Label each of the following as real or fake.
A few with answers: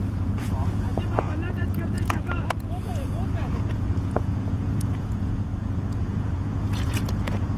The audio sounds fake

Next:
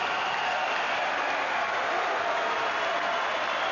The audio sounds real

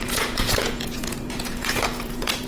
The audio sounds fake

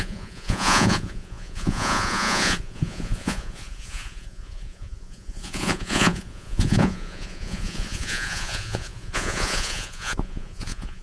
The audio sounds fake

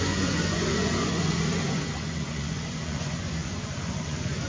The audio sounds fake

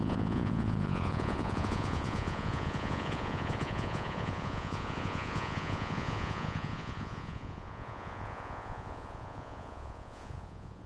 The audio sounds fake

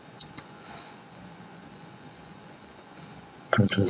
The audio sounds fake